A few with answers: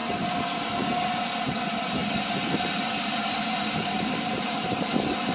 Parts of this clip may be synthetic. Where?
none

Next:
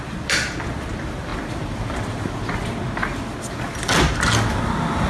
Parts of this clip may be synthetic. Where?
none

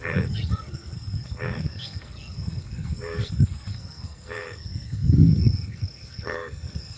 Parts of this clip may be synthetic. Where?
0.0-7.0 (codec, SNAC)

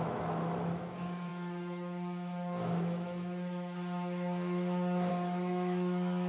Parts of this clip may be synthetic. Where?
0.0-6.3 (autoencoder, DAC-VAE)

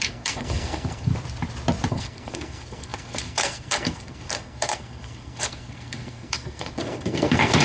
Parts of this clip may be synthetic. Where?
0.0-1.1 (codec, SNAC); 1.9-7.6

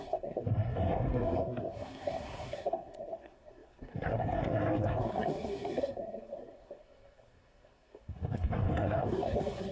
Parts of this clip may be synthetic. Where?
0.0-9.7 (codec, SNAC)

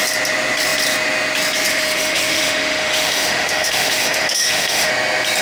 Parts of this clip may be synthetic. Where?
1.7-4.9 (autoencoder, DAC-VAE)